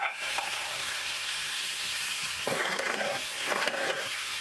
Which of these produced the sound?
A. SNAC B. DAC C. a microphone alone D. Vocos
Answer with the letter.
A